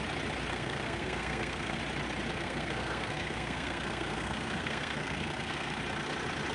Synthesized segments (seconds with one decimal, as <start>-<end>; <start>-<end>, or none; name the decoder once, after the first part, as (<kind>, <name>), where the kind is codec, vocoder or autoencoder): 0.5-1.8 (codec, SNAC); 2.3-5.8